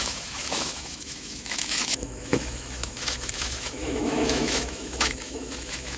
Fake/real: fake